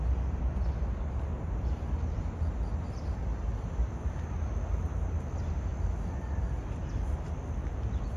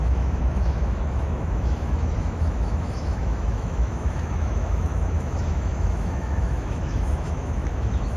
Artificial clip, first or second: second